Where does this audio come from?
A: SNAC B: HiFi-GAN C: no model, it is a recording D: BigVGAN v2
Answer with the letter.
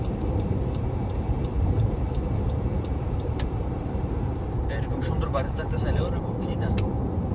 D